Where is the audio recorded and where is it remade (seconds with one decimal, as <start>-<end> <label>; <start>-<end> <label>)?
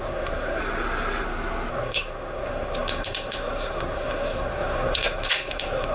0.0-0.6 remade; 0.6-1.7 recorded; 1.7-5.9 remade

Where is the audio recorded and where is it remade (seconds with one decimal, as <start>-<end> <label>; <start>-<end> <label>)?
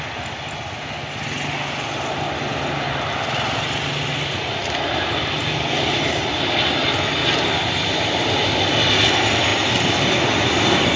0.0-11.0 recorded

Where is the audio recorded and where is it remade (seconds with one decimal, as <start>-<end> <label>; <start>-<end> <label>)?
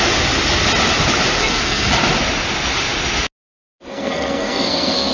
0.0-1.4 recorded; 1.4-1.9 remade; 1.9-3.9 recorded; 3.9-5.1 remade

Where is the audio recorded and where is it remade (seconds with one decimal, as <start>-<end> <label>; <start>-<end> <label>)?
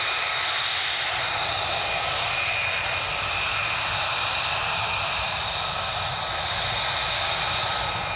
0.0-8.2 recorded